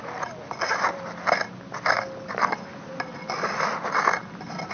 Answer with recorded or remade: recorded